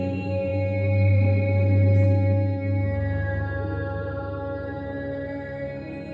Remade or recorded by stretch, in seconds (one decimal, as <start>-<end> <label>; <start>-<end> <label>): 0.0-6.1 recorded